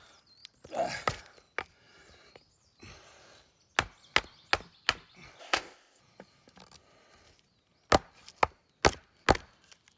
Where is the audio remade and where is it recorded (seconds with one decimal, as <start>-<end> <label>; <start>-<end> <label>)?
0.0-5.4 recorded; 5.4-6.0 remade; 6.0-10.0 recorded